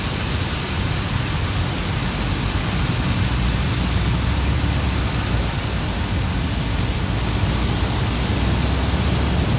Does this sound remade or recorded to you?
recorded